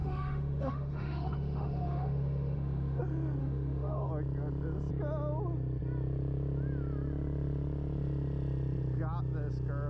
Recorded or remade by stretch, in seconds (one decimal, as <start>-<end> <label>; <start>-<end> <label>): 0.0-3.0 remade; 3.0-3.4 recorded; 3.4-4.1 remade; 4.1-9.9 recorded

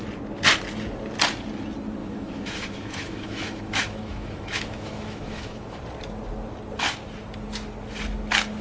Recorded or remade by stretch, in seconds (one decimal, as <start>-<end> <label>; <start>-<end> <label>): 0.0-2.0 recorded; 2.0-5.8 remade; 5.8-8.6 recorded